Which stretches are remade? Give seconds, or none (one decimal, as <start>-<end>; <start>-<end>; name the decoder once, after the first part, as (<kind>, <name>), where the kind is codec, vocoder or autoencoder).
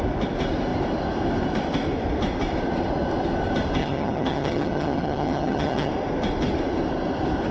3.8-5.9 (vocoder, HiFi-GAN)